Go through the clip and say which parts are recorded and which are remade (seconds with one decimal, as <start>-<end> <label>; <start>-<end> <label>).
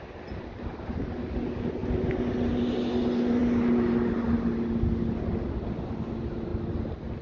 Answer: 0.0-7.2 recorded